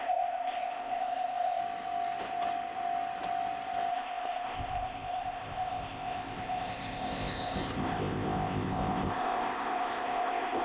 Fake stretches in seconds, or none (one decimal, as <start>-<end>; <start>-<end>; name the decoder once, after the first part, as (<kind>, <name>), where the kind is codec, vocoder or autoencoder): 0.0-1.6 (codec, ZipCodec); 3.9-10.6